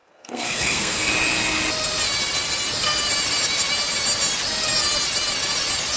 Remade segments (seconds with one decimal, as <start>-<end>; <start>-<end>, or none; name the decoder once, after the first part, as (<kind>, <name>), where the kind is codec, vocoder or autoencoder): 0.0-1.1 (codec, SNAC)

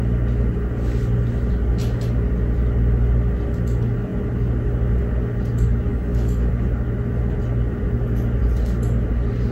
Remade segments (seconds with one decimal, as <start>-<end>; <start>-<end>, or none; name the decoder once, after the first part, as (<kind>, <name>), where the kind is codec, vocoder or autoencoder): 5.9-6.5 (codec, DAC)